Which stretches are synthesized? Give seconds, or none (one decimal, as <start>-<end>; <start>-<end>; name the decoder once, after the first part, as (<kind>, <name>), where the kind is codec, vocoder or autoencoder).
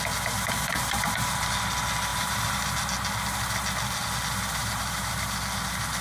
2.1-2.7 (vocoder, BigVGAN v2); 4.6-5.2